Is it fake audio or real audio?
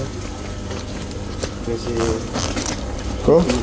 real